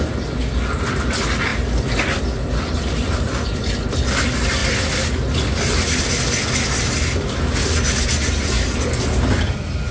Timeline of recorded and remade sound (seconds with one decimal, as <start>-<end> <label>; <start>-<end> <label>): 0.0-9.9 recorded